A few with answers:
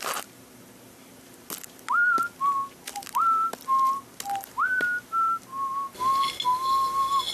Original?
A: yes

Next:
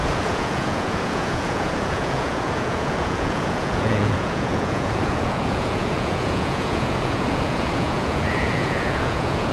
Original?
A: no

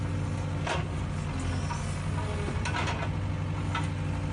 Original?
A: yes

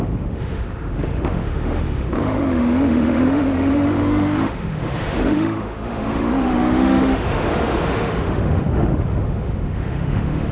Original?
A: no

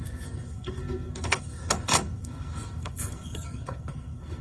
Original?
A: no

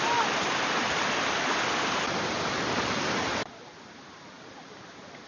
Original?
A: yes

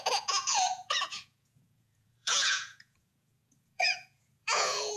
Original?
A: no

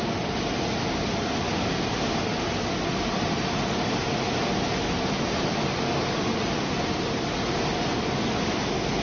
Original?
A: yes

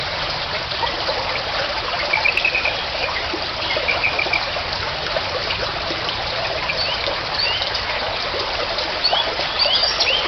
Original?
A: yes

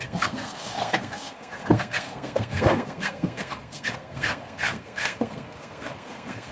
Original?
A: no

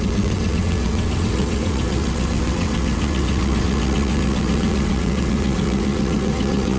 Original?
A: no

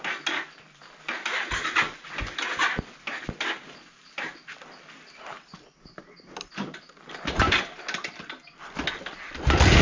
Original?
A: yes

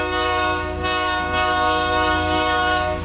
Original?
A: no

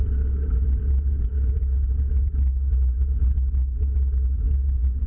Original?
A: yes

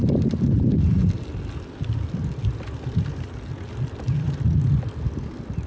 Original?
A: yes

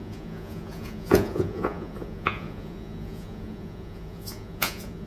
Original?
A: no